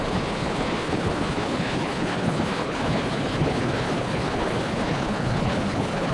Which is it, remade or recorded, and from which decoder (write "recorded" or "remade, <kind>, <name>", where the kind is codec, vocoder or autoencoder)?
remade, codec, HILCodec